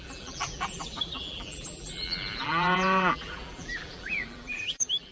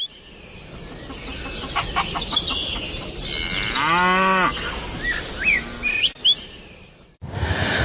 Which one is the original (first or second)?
second